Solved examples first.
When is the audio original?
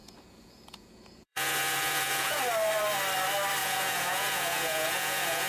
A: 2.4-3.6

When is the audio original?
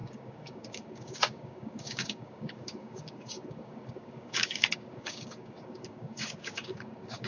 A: none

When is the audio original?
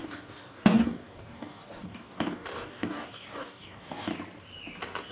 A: 4.1-5.1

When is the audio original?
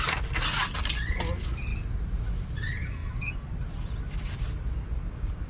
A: 1.7-2.3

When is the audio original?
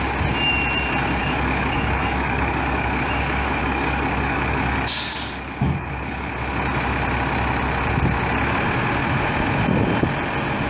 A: 0.0-1.2; 6.3-10.7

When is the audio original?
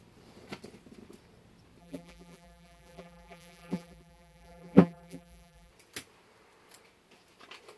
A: 0.0-1.8; 5.7-7.8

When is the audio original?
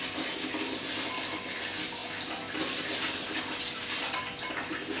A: 0.0-5.0